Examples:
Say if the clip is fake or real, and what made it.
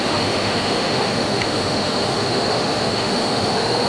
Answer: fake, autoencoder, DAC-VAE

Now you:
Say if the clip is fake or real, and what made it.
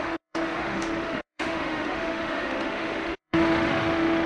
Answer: fake, autoencoder, DAC-VAE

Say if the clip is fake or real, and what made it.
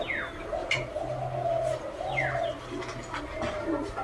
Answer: real